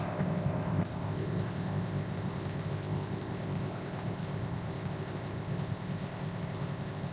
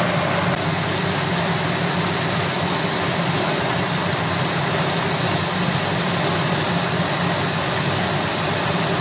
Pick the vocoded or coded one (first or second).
first